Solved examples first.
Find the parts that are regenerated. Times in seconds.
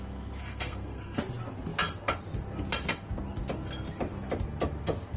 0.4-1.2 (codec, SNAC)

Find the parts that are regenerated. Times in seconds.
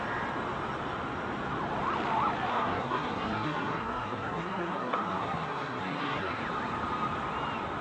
2.5-6.4 (codec, SNAC)